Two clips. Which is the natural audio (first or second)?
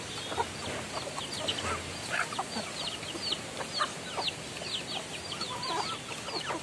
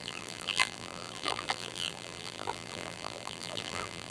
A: first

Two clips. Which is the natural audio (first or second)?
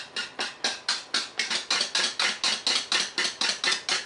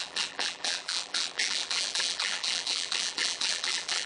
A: first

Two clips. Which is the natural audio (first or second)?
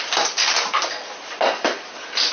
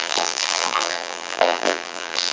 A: first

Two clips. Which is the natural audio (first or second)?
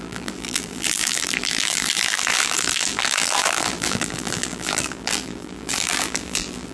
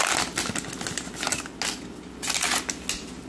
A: second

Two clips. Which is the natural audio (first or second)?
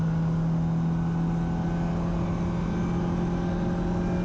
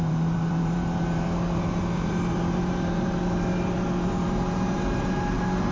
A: first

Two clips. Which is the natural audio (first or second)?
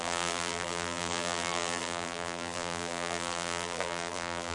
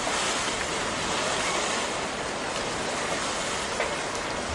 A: second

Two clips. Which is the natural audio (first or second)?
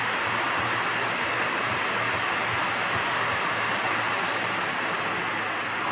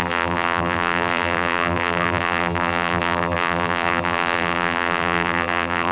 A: first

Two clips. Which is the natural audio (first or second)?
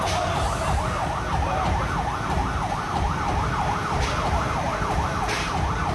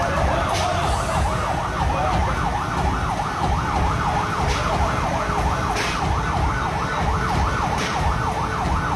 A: second